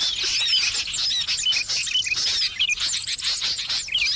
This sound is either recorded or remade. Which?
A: recorded